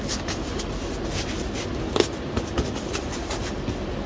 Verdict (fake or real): real